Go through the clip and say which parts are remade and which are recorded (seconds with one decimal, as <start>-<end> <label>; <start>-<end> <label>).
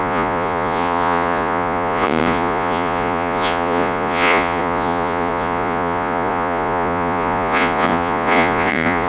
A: 0.0-9.1 remade